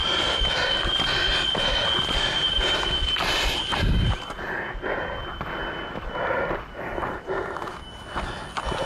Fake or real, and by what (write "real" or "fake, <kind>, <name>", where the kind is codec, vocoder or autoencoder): real